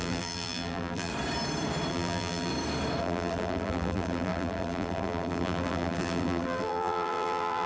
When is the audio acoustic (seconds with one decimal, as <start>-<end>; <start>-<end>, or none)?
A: 1.1-1.9; 2.5-3.0